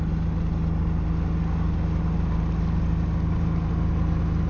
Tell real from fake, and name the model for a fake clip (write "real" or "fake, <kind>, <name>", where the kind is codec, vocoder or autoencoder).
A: real